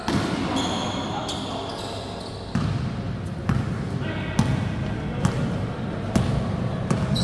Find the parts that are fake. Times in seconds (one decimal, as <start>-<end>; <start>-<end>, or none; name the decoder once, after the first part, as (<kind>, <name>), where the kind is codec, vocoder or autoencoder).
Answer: 0.0-1.4 (vocoder, BigVGAN v2)

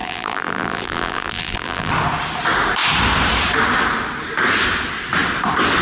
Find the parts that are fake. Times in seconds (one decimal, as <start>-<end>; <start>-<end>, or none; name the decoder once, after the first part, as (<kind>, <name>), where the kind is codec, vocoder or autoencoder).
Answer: 0.0-1.9 (vocoder, BigVGAN v2)

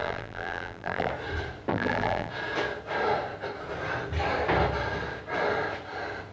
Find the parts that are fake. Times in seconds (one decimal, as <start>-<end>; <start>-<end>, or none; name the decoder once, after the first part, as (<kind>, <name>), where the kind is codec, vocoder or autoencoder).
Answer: 0.0-1.1 (vocoder, BigVGAN v2); 1.7-2.3

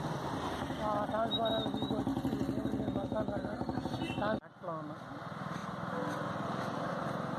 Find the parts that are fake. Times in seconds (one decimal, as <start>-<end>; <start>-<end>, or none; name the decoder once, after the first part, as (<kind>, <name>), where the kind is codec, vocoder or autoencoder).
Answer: none

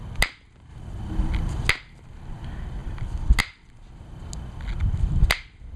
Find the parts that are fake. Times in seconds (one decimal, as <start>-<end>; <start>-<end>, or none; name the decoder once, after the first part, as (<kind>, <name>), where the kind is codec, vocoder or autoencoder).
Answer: 0.7-1.7 (vocoder, BigVGAN v2); 2.8-3.4